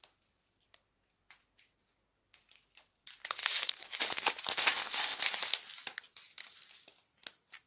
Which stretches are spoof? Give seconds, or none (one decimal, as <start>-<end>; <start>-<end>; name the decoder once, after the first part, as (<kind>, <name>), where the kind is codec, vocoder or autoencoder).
4.5-5.2 (codec, ZipCodec)

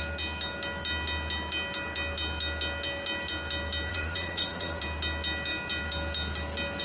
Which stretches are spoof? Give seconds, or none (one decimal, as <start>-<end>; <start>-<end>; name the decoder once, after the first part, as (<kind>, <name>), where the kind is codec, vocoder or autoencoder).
3.9-4.8 (vocoder, Vocos)

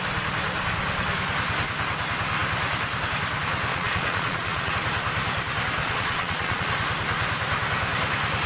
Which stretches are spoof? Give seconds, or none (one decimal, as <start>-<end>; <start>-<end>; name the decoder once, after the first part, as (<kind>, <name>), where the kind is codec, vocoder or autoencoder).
3.7-4.7 (vocoder, Vocos); 5.8-6.7

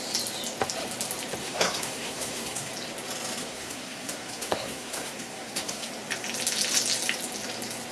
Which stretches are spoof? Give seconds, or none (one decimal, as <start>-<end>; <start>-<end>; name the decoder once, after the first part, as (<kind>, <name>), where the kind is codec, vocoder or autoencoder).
1.4-2.7 (codec, SNAC); 3.4-5.9